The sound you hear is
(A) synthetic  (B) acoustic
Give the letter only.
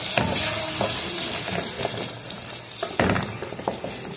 B